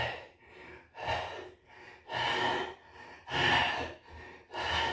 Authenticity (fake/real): real